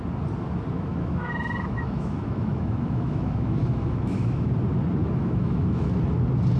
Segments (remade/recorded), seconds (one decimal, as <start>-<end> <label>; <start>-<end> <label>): 0.0-0.9 recorded; 0.9-4.5 remade; 4.5-5.0 recorded; 5.0-5.9 remade; 5.9-6.6 recorded